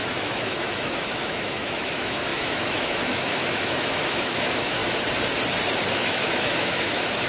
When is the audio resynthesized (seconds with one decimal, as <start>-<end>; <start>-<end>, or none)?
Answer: 0.0-4.8; 5.9-7.3